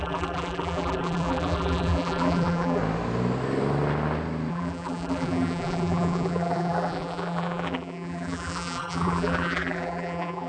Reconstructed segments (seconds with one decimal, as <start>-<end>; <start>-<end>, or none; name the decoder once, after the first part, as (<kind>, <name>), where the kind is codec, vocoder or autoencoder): 0.0-2.8 (vocoder, BigVGAN v2); 4.5-10.5